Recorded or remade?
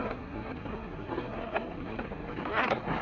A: remade